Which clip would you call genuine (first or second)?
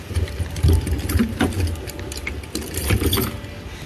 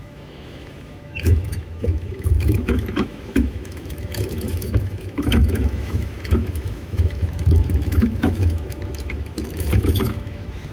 first